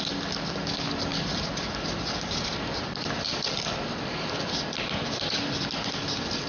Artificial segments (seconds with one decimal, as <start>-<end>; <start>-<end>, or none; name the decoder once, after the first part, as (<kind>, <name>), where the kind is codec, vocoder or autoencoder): 1.1-4.6 (vocoder, BigVGAN v2)

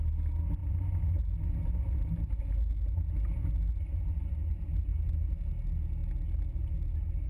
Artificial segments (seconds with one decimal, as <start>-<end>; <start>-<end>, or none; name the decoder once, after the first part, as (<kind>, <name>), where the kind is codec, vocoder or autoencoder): none

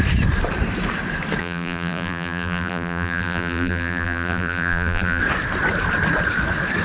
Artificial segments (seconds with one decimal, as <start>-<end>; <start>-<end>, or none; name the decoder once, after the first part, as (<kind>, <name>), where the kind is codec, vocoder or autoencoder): 1.4-5.2 (vocoder, BigVGAN v2)